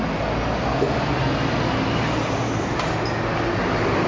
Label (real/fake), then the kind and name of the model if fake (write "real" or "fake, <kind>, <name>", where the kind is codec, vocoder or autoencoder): real